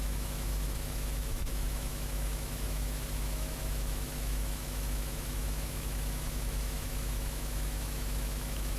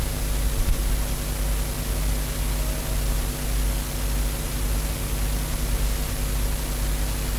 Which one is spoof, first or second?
first